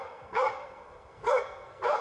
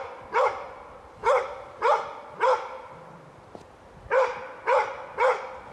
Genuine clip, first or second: second